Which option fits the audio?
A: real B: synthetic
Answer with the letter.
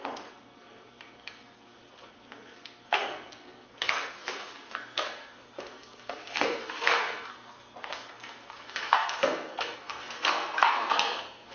B